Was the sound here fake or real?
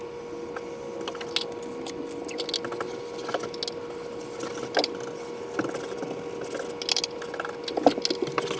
real